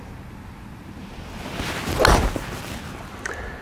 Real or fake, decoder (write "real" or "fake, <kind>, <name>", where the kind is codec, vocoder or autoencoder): real